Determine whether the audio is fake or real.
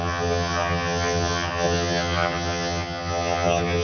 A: fake